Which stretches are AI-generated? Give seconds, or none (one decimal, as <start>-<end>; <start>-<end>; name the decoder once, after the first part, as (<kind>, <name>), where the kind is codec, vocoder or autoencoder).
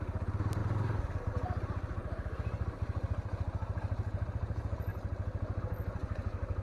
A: 0.0-4.9 (vocoder, BigVGAN v2); 5.6-6.6